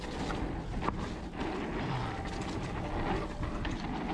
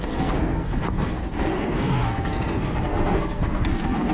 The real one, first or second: first